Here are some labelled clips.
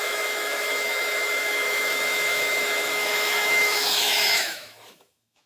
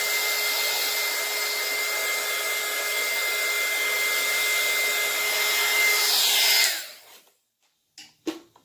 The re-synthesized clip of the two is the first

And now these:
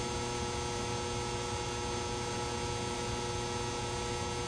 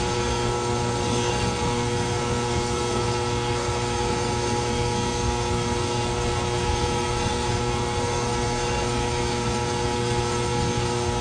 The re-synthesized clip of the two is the second